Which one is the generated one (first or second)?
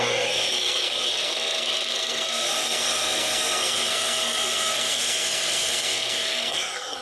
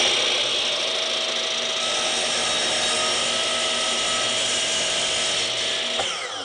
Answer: first